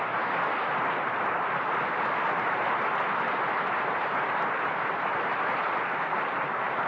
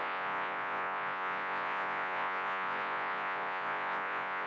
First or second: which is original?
first